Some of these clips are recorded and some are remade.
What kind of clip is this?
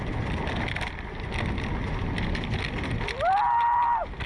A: recorded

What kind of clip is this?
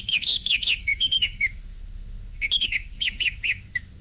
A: remade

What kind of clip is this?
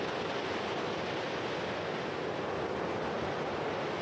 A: recorded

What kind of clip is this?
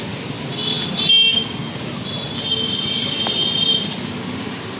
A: recorded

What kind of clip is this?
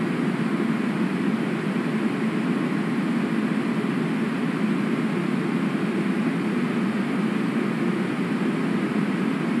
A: recorded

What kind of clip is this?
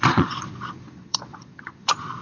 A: remade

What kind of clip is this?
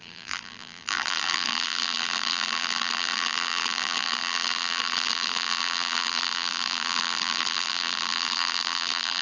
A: remade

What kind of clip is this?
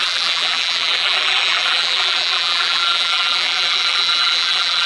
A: remade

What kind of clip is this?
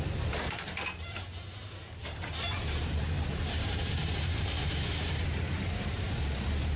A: remade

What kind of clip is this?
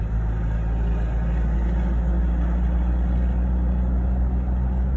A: recorded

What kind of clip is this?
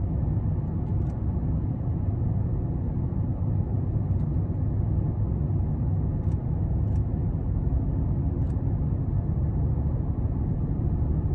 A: recorded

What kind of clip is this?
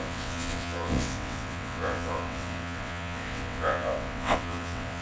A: remade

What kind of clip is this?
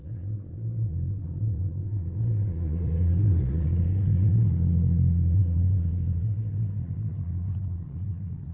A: remade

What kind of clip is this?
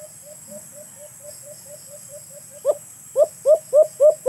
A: recorded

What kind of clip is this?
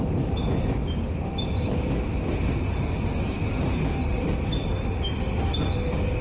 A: recorded